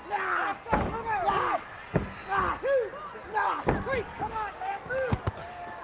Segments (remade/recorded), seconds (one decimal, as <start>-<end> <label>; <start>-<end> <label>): 0.0-4.1 recorded; 4.1-5.2 remade; 5.2-5.8 recorded